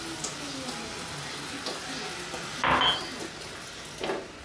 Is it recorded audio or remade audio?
recorded